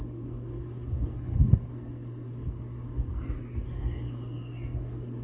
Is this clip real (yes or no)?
no